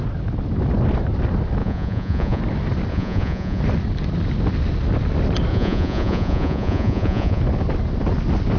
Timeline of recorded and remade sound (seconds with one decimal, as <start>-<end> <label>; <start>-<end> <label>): 0.0-1.6 recorded; 1.6-2.4 remade; 2.4-2.9 recorded; 2.9-3.6 remade; 3.6-5.5 recorded; 5.5-7.4 remade; 7.4-8.6 recorded